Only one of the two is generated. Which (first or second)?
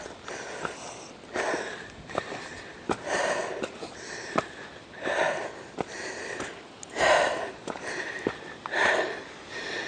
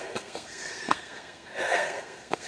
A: second